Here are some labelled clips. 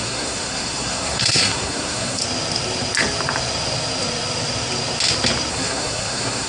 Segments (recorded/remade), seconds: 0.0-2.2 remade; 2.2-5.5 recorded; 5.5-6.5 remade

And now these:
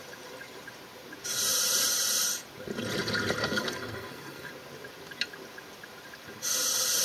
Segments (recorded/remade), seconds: 0.0-3.4 recorded; 3.4-4.5 remade; 4.5-7.0 recorded